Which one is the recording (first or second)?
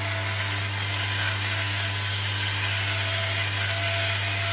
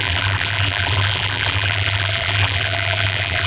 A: first